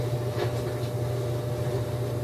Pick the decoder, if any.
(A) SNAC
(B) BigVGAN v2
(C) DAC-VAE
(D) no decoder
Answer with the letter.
D